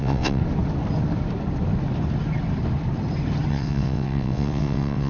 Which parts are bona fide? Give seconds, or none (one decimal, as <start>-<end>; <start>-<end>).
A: 0.4-3.5